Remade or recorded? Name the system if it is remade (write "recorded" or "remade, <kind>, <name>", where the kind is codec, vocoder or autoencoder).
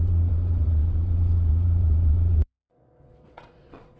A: remade, vocoder, Vocos